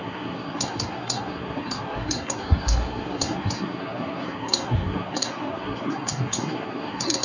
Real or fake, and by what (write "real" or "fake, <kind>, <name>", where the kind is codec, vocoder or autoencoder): fake, codec, SNAC